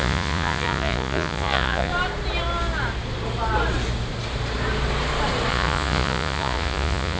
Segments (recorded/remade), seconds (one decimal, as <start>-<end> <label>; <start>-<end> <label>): 0.0-1.9 remade; 1.9-5.5 recorded; 5.5-7.2 remade